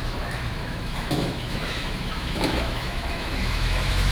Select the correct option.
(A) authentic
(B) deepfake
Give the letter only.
B